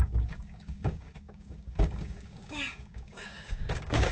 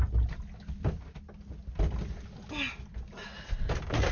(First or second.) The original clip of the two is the second